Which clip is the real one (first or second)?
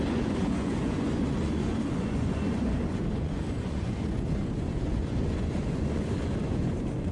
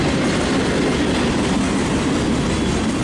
second